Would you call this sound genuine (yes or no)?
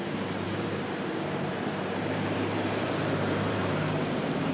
no